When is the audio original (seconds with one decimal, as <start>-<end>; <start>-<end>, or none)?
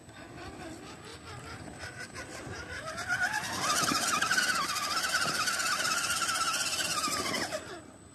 0.6-8.1